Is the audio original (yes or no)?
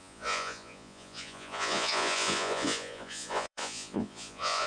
no